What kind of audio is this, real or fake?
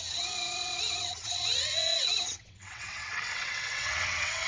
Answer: fake